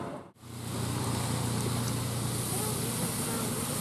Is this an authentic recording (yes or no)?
yes